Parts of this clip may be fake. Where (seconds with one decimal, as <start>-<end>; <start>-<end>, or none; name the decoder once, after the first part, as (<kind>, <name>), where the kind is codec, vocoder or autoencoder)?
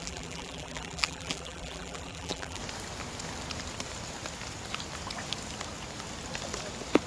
0.0-2.6 (vocoder, BigVGAN v2)